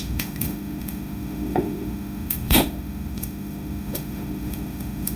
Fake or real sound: fake